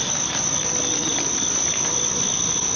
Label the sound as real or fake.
real